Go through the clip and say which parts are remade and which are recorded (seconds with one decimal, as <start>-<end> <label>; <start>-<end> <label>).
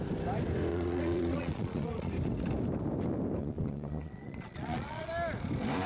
0.0-0.7 recorded; 0.7-2.1 remade; 2.1-3.4 recorded; 3.4-5.1 remade; 5.1-5.9 recorded